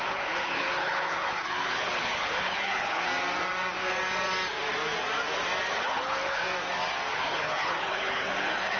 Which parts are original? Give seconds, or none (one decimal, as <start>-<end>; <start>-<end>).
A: 3.1-5.7; 6.4-7.1